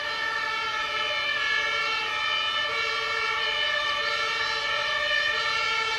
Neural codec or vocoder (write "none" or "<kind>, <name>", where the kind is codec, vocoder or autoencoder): none